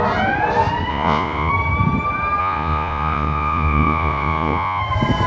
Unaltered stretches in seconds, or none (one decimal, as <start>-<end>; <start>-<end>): 0.0-0.9; 1.5-2.4; 4.8-5.3